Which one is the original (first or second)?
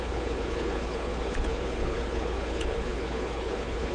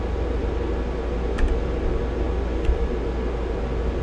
second